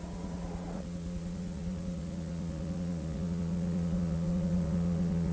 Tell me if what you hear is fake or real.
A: fake